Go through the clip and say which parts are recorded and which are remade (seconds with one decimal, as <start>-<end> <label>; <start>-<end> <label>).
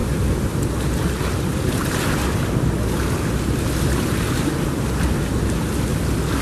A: 0.0-6.4 recorded